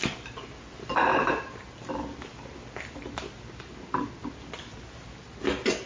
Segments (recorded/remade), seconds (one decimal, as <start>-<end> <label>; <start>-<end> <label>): 0.0-5.9 recorded